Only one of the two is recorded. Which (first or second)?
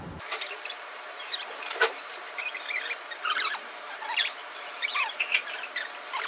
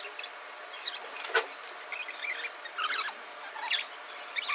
second